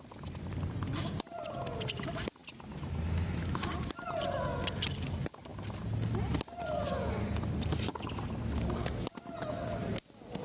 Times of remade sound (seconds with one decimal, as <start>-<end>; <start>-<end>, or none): none

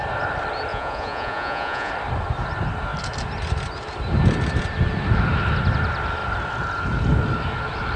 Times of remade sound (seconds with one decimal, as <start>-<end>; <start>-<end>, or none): 0.7-1.9

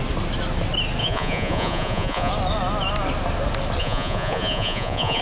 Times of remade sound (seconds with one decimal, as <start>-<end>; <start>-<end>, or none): 1.0-2.3; 3.8-5.2

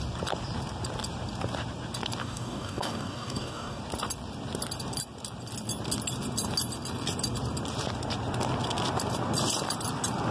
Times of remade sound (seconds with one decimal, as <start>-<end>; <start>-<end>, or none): 2.2-3.8

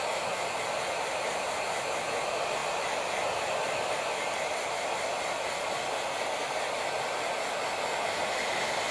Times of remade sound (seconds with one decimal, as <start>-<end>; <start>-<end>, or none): none